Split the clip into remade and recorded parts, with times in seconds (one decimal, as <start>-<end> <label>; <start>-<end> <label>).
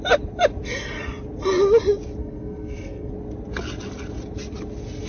0.0-2.2 recorded; 2.2-3.1 remade; 3.1-5.1 recorded